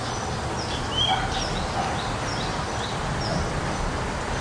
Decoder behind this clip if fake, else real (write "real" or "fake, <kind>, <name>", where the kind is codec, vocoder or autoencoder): real